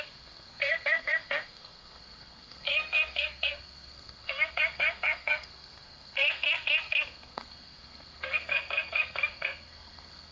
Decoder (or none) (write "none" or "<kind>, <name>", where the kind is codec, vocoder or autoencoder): codec, SNAC